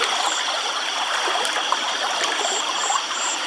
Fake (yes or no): yes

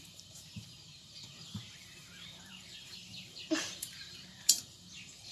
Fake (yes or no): yes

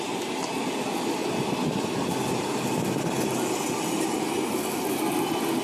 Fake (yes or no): no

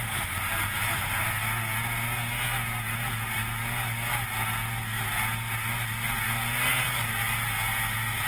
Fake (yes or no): no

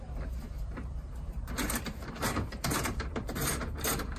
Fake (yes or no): yes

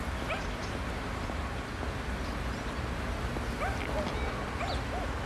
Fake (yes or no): no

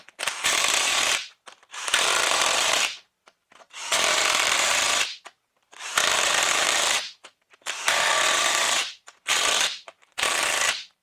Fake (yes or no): yes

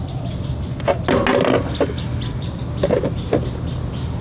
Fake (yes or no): no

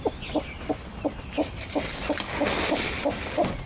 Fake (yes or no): no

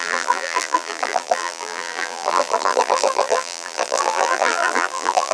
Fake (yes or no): yes